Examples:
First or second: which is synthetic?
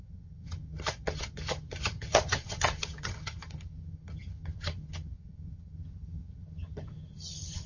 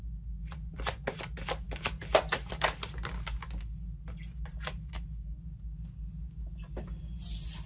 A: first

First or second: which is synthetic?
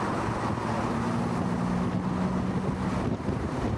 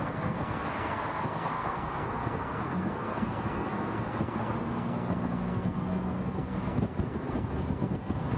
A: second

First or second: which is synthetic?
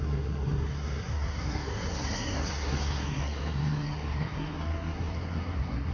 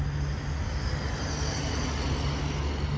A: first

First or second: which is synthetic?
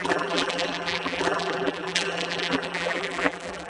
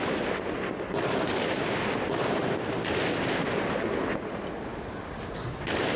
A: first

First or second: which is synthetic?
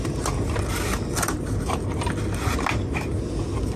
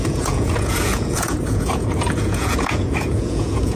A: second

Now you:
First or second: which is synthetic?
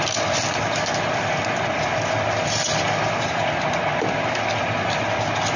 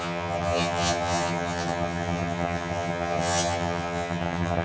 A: second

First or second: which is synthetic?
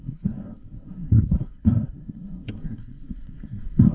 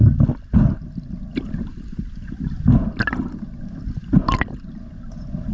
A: first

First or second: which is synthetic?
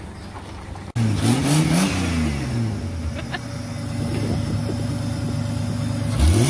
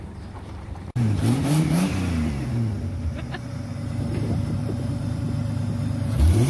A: second